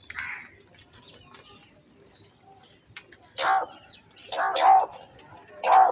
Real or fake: real